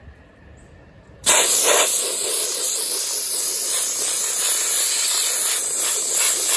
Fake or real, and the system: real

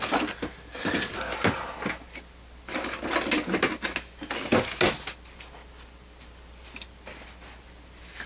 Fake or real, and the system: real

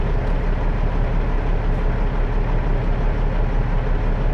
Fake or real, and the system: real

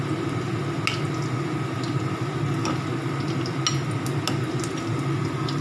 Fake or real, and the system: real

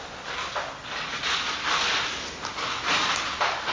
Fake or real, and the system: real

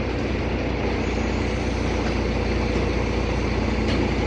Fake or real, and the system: real